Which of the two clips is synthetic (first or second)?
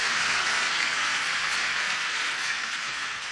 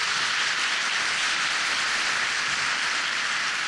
first